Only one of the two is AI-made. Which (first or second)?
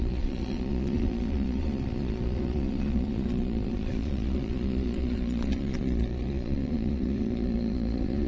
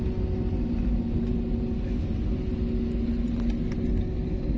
first